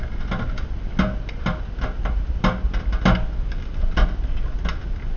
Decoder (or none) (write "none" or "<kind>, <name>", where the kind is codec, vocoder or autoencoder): none